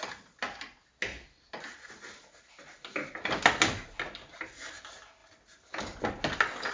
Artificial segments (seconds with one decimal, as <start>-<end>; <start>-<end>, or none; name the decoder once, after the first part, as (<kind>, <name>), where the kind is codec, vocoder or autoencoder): none